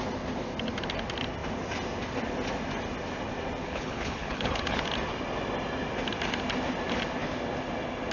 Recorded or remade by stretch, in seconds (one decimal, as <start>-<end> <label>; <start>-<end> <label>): 0.0-3.6 recorded; 3.6-4.8 remade; 4.8-8.1 recorded